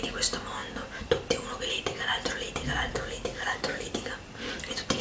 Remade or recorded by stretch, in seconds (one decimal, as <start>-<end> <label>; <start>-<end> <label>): 0.0-2.9 recorded; 2.9-4.1 remade; 4.1-5.0 recorded